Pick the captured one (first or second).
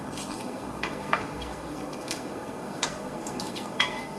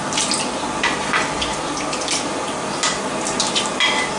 second